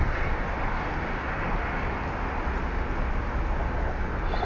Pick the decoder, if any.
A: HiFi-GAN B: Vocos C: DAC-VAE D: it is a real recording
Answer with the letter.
D